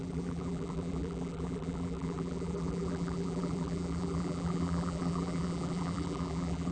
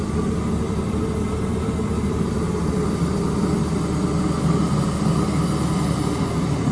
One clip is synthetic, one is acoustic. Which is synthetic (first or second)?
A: first